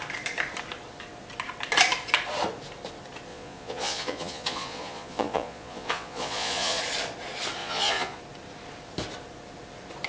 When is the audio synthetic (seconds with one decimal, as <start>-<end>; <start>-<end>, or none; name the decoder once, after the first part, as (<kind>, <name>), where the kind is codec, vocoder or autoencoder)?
3.3-6.8 (vocoder, Vocos); 7.6-8.2